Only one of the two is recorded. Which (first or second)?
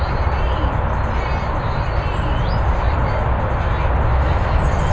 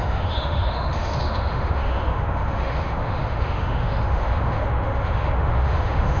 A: first